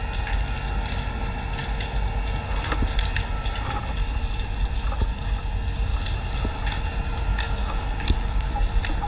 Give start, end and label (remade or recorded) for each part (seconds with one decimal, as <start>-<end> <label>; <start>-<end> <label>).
0.0-7.3 recorded; 7.3-8.5 remade; 8.5-9.1 recorded